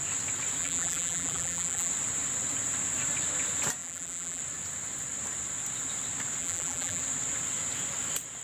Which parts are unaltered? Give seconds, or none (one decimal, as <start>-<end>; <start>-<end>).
0.0-0.6; 1.9-3.8; 4.4-6.4; 7.0-8.4

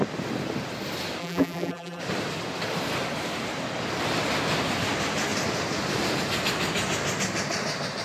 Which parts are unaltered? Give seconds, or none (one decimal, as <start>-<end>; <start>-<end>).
0.0-1.2; 2.0-8.0

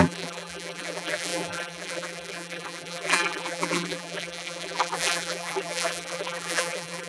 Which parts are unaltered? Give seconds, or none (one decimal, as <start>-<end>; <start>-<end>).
none